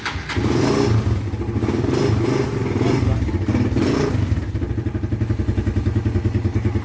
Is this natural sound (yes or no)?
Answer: yes